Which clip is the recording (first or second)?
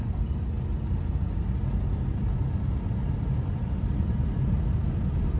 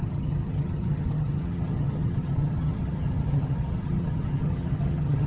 first